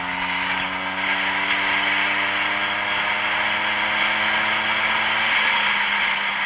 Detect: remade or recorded recorded